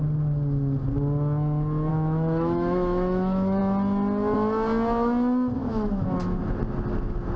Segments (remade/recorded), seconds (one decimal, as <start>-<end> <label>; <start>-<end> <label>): 0.0-1.9 recorded; 1.9-3.6 remade; 3.6-5.6 recorded; 5.6-6.4 remade; 6.4-7.4 recorded